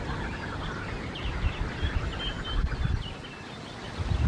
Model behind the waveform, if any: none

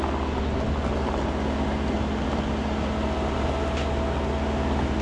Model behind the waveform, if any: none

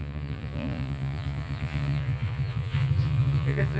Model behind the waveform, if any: vocoder, Vocos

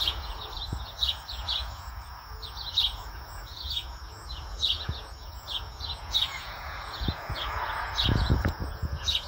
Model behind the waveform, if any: vocoder, Vocos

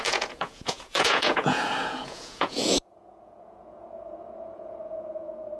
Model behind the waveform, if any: vocoder, Vocos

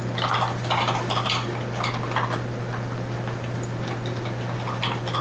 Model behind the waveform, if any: none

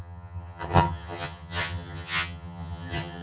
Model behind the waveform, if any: vocoder, HiFi-GAN